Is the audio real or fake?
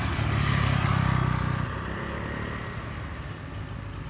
real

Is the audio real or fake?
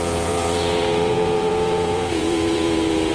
fake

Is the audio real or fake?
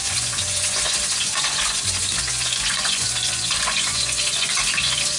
fake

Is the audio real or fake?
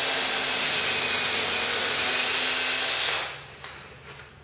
real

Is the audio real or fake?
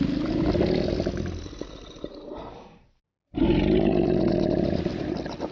real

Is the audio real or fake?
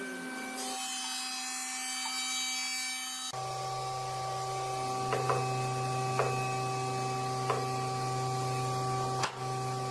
real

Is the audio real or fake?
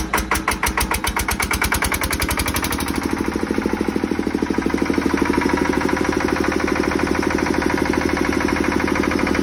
real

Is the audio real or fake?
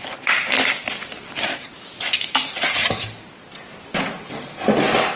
real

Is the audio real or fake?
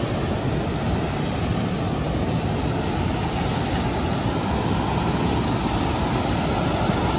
real